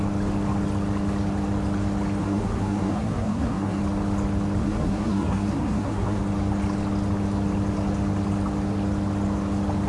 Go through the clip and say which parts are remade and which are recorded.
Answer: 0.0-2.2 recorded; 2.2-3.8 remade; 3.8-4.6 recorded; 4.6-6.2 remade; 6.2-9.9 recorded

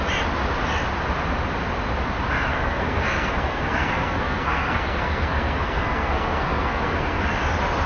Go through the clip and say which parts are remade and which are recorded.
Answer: 0.0-2.5 recorded; 2.5-7.2 remade; 7.2-7.9 recorded